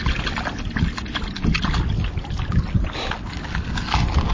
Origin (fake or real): real